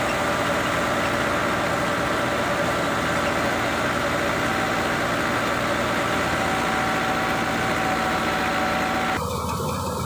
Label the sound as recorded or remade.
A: recorded